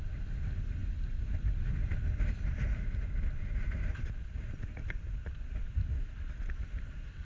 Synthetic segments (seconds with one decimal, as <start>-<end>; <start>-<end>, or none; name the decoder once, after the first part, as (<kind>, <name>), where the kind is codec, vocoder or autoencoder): none